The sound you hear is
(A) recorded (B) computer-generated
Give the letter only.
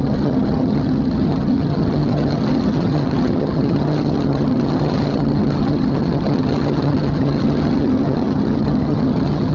B